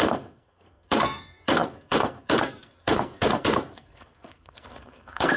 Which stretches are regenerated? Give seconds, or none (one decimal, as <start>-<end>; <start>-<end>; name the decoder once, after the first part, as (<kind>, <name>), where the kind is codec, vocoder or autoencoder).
0.0-5.4 (codec, SNAC)